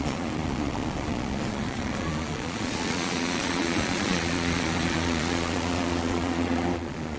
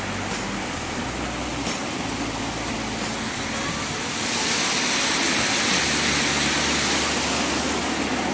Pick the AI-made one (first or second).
first